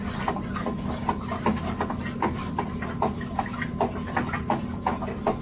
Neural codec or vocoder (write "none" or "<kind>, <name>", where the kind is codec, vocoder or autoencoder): none